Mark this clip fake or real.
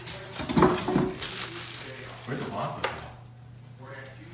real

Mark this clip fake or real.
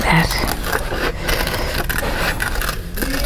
real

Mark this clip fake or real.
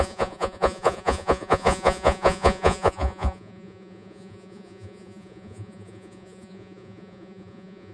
fake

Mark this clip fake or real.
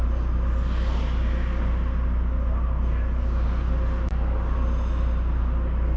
real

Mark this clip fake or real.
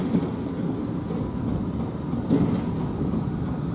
real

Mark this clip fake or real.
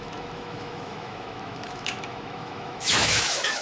fake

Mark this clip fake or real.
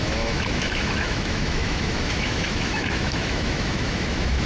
fake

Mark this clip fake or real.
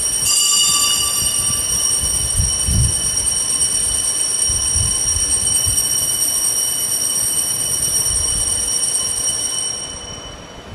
real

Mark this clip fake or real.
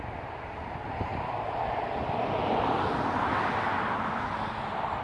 real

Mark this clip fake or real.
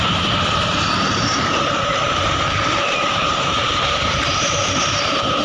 fake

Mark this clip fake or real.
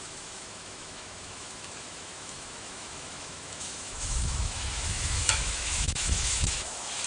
fake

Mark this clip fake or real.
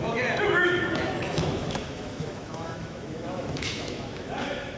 fake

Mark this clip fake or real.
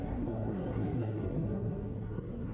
fake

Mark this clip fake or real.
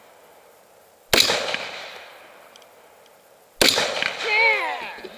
real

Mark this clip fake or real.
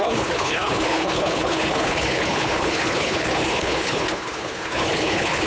fake